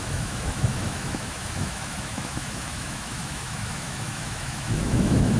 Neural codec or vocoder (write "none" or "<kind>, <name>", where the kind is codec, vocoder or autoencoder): autoencoder, DAC-VAE